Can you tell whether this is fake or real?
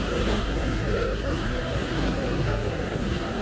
fake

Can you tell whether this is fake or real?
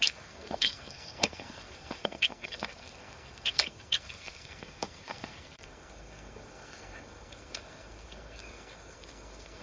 fake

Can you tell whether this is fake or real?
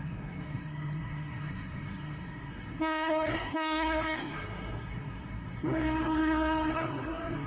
fake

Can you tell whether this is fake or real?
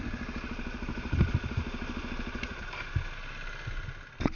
real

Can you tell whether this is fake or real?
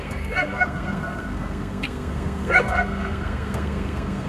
fake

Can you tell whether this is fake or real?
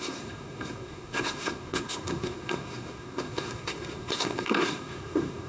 fake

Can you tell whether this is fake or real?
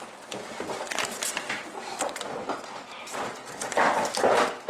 real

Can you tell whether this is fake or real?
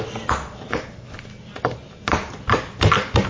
real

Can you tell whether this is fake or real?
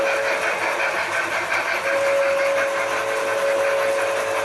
real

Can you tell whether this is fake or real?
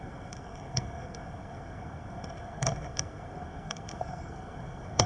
fake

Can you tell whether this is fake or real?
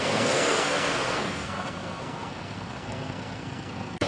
fake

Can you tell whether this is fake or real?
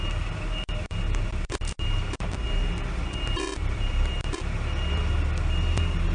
real